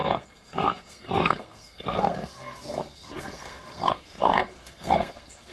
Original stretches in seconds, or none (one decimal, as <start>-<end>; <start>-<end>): none